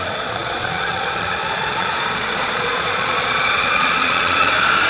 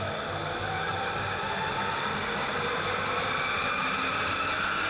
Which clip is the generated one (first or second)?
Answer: first